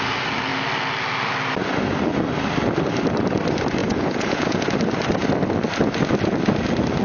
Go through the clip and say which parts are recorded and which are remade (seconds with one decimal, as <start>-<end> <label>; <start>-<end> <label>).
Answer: 0.0-3.8 recorded; 3.8-4.7 remade; 4.7-7.0 recorded